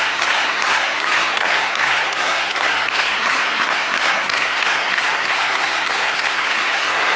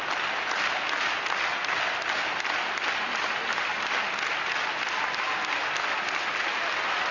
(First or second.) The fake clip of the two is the first